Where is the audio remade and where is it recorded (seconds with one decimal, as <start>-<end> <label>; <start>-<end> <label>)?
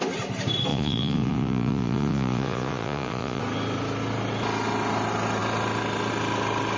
0.0-0.7 recorded; 0.7-3.4 remade; 3.4-6.8 recorded